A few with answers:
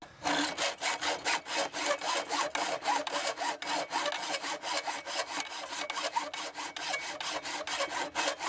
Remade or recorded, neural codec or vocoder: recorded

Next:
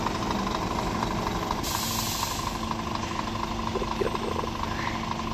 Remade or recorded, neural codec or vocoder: recorded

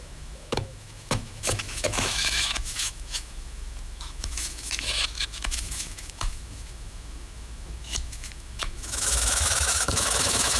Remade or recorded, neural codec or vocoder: remade, autoencoder, DAC-VAE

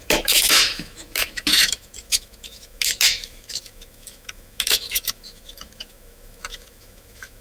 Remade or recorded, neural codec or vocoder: remade, autoencoder, DAC-VAE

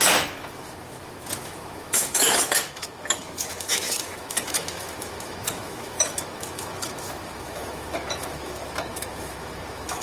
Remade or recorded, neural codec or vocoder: remade, autoencoder, DAC-VAE